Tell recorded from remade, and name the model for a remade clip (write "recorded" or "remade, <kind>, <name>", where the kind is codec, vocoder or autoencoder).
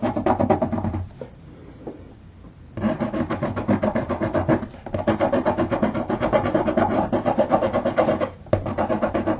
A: remade, vocoder, BigVGAN v2